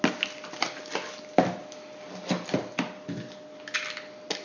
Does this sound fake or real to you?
real